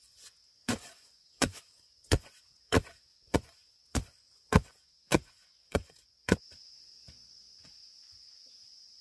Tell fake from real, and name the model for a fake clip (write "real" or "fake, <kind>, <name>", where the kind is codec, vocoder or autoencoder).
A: fake, vocoder, Vocos